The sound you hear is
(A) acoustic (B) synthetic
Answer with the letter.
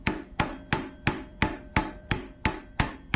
B